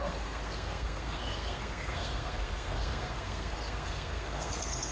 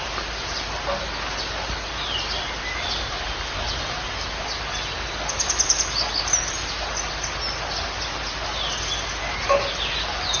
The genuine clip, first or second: second